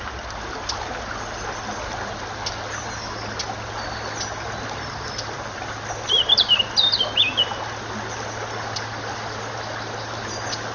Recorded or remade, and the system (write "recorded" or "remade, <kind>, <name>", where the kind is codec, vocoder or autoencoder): recorded